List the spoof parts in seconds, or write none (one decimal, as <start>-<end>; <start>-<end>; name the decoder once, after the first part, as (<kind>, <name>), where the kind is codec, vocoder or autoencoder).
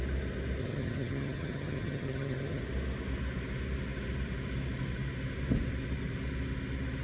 0.6-2.6 (vocoder, HiFi-GAN)